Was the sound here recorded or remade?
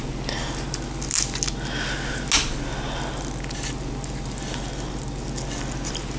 recorded